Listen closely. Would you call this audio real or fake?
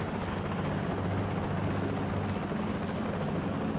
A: real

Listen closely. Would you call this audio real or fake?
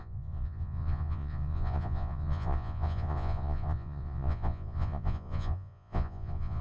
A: fake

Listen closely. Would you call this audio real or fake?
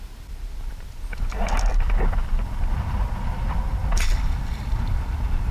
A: real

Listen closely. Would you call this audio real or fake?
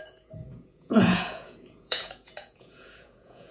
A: fake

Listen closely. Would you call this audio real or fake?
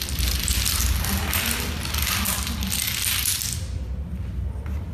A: real